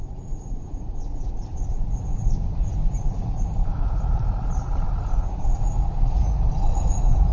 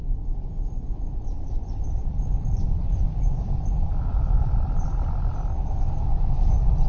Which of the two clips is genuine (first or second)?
second